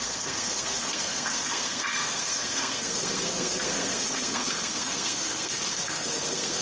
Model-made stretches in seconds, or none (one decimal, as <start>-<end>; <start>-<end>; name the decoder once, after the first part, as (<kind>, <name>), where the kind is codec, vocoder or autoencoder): 0.0-6.6 (codec, SNAC)